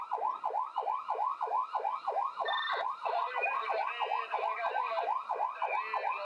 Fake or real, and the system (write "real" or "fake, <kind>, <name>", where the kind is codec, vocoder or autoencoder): real